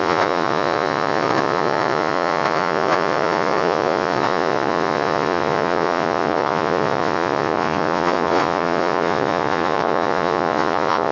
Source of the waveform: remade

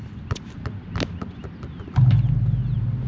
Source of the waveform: recorded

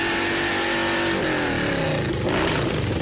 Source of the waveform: recorded